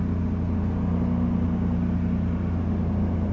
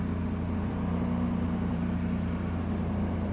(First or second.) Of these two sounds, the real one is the first